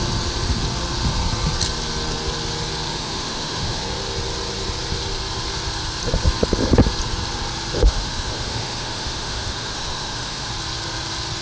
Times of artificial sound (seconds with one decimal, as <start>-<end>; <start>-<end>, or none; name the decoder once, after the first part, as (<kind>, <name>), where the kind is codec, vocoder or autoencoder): 2.9-3.8 (autoencoder, DAC-VAE); 7.8-10.5